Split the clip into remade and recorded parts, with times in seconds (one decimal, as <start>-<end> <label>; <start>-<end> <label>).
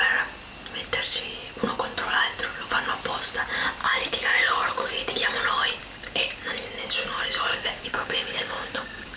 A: 0.0-3.8 recorded; 3.8-5.0 remade; 5.0-5.8 recorded; 5.8-6.4 remade; 6.4-7.5 recorded; 7.5-9.2 remade